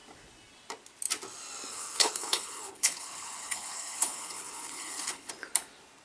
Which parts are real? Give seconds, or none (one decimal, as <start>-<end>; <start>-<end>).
0.0-1.7; 5.3-6.0